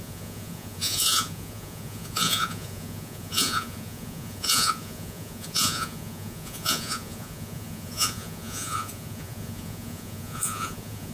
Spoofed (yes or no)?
yes